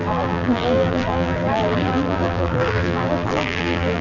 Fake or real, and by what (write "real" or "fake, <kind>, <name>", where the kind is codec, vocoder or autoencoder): fake, vocoder, BigVGAN v2